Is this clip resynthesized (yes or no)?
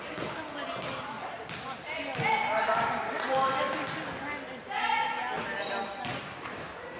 no